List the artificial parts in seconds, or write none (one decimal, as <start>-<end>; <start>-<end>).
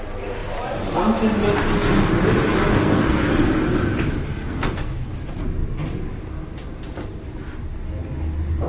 2.7-3.3; 4.3-5.1